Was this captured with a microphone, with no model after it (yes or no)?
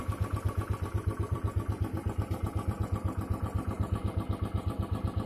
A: no